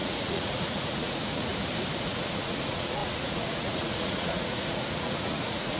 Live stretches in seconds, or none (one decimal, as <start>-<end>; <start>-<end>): 1.5-2.0